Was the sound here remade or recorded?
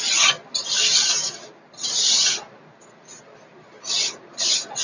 recorded